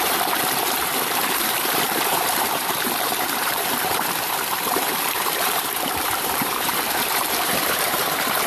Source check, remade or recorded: remade